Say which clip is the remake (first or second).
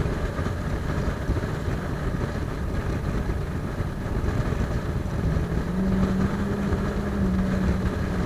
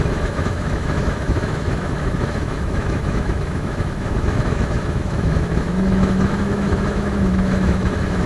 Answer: second